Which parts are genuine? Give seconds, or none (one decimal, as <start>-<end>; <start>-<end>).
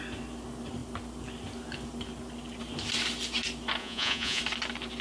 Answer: 0.0-3.8; 4.4-5.0